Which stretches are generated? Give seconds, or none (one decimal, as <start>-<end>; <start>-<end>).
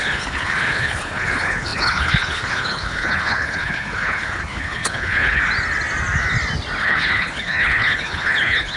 0.0-5.4; 6.8-8.8